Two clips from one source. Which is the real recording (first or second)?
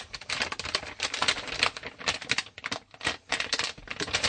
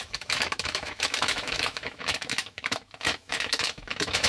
first